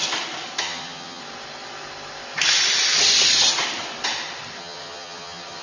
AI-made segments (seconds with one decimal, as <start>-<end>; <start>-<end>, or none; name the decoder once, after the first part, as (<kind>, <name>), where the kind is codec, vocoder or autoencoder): 0.6-1.2 (vocoder, HiFi-GAN); 4.6-5.6